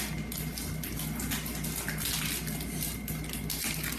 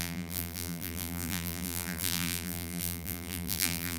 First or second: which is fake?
second